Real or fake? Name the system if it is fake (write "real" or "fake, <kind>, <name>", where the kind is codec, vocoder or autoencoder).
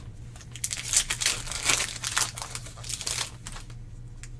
real